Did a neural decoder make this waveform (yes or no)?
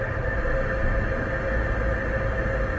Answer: no